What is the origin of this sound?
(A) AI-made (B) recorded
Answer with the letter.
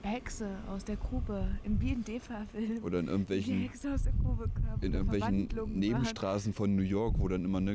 B